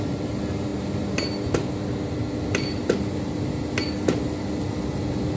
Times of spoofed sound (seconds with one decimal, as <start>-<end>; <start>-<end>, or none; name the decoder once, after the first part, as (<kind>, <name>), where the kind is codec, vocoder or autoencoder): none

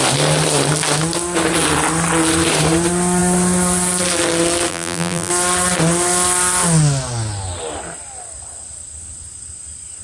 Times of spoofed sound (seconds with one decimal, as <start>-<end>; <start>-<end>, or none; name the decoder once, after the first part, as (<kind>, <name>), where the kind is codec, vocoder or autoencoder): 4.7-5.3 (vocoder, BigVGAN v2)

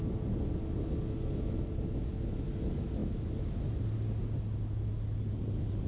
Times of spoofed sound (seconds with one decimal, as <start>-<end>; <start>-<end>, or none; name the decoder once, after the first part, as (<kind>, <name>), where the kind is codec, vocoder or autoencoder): none

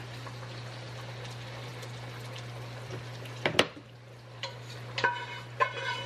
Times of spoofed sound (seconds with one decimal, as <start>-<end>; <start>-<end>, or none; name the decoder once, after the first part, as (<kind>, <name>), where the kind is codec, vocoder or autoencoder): none